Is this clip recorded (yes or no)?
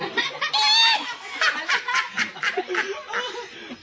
yes